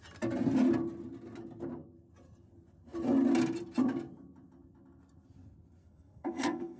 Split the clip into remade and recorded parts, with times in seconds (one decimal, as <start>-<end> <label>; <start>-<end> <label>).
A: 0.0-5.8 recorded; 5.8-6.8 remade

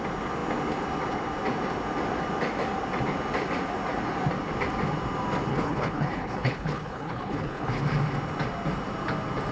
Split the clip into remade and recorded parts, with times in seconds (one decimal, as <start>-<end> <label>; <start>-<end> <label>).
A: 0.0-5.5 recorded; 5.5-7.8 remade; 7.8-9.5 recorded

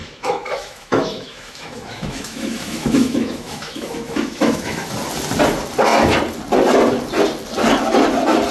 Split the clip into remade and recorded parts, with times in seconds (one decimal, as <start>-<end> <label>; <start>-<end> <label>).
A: 0.0-4.9 remade; 4.9-8.5 recorded